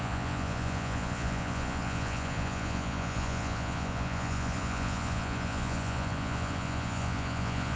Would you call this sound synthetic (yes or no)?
yes